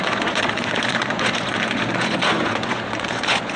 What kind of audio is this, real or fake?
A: fake